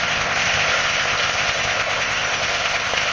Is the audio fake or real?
fake